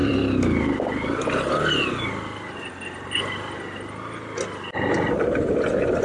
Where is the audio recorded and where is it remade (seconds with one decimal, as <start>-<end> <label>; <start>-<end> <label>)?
0.0-2.7 remade; 2.7-6.0 recorded